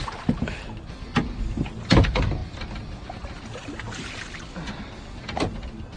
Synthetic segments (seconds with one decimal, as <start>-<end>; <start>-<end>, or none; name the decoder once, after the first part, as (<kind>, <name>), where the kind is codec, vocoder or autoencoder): none